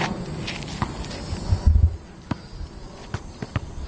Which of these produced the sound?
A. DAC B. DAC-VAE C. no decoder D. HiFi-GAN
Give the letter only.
C